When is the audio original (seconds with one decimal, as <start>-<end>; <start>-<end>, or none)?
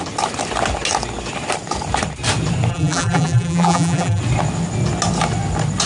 0.0-2.7; 4.2-5.9